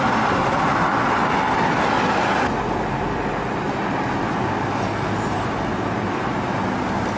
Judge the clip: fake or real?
real